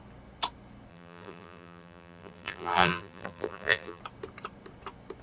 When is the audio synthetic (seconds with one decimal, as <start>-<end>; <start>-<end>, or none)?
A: 0.9-4.0